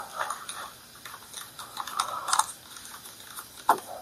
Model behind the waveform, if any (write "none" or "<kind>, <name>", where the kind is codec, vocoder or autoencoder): none